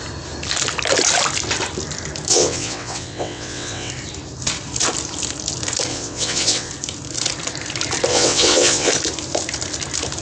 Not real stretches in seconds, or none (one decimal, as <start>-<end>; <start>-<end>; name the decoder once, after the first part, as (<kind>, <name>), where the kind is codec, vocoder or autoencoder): 2.3-3.9 (vocoder, WaveNeXt); 5.9-6.7; 8.1-8.9